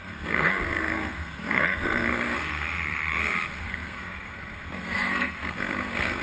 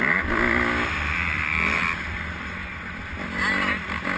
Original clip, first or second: second